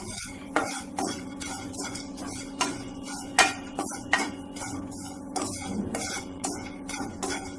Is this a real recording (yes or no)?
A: no